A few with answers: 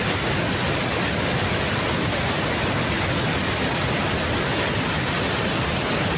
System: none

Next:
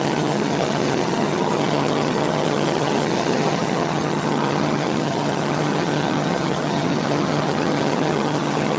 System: vocoder, HiFi-GAN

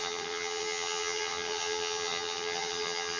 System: vocoder, HiFi-GAN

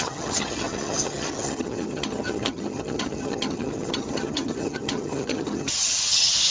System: vocoder, HiFi-GAN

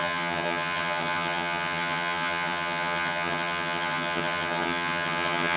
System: vocoder, HiFi-GAN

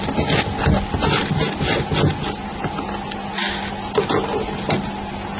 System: none